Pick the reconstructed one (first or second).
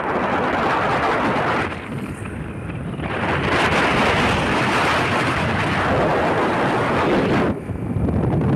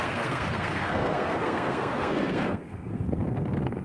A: second